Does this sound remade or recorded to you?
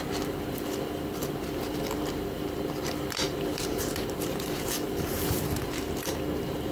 remade